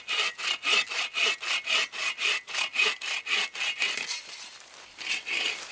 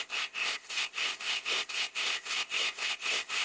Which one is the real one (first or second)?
first